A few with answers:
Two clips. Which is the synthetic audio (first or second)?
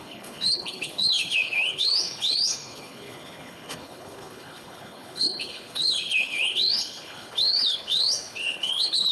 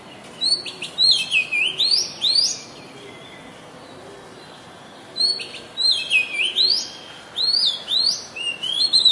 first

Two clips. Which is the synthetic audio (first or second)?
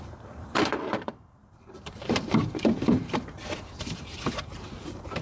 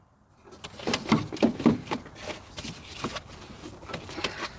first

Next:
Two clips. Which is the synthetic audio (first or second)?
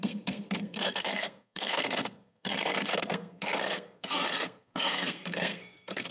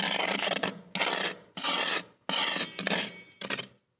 first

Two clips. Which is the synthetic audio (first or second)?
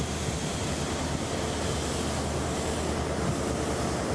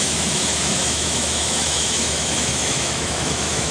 second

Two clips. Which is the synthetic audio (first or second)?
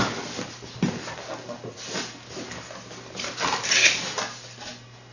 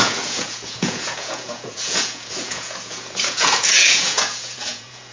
second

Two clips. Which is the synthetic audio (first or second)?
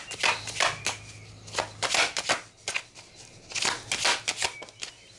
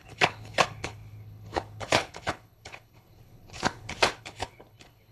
second